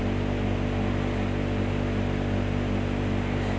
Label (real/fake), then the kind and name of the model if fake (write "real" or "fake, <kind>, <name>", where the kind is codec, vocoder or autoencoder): real